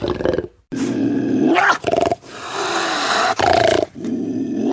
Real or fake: real